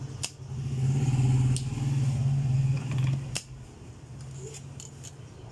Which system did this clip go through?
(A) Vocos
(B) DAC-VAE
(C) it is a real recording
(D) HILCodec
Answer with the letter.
C